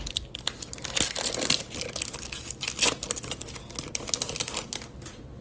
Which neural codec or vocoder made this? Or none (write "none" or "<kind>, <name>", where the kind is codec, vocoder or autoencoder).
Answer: none